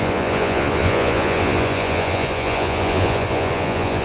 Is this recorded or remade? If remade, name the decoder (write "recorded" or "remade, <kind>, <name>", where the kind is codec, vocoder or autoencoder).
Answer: remade, vocoder, Vocos